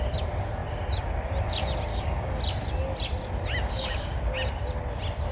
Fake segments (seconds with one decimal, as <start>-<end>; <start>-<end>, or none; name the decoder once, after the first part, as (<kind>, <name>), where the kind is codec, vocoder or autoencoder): 1.9-2.4 (codec, DAC); 3.6-4.2

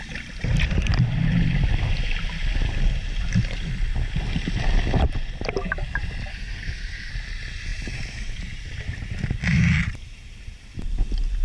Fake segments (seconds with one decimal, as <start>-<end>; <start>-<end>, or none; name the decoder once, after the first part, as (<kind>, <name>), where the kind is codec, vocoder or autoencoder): 6.3-7.1 (codec, SNAC)